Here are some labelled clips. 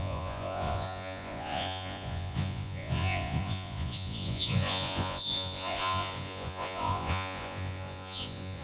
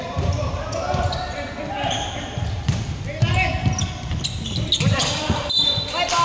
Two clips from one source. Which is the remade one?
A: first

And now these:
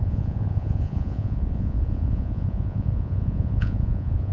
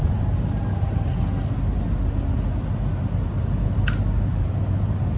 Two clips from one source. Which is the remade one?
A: first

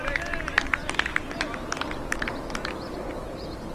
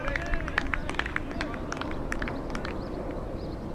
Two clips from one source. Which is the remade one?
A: second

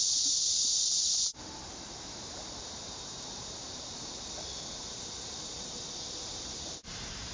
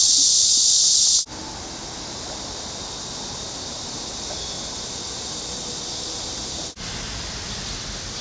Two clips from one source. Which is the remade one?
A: first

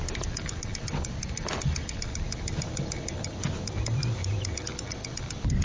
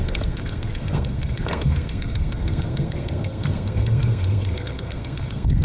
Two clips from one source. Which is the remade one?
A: second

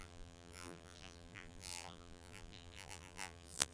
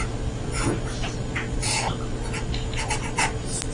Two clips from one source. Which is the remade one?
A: first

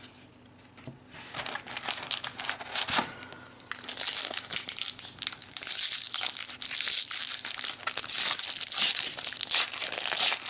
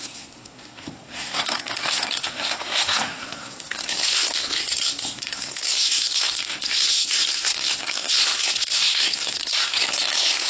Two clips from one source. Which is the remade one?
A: second